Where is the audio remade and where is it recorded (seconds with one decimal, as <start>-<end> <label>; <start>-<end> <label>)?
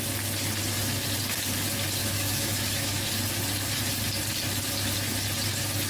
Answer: 0.0-2.0 recorded; 2.0-3.1 remade; 3.1-5.9 recorded